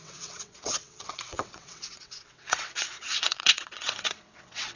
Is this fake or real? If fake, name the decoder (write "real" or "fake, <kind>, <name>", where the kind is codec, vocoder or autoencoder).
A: fake, vocoder, WaveNeXt